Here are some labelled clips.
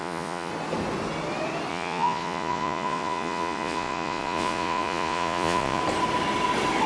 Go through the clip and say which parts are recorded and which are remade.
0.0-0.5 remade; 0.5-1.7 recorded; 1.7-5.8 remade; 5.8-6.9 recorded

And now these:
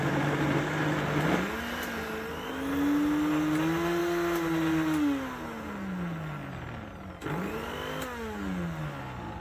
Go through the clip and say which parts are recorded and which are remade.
0.0-9.4 recorded